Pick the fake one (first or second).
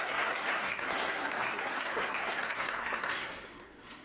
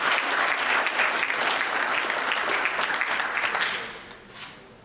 first